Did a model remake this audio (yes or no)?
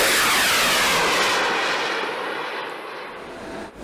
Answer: no